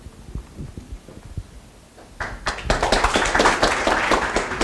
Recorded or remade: recorded